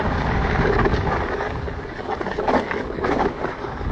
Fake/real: fake